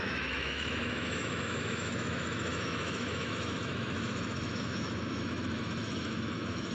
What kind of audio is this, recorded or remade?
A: remade